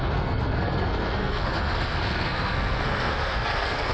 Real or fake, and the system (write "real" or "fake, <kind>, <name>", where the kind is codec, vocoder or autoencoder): fake, codec, SNAC